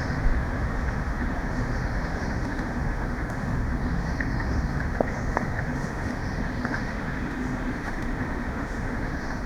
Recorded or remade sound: remade